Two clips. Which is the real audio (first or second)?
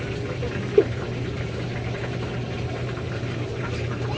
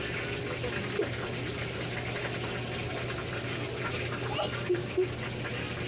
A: second